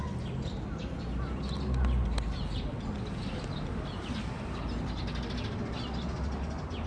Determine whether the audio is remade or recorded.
recorded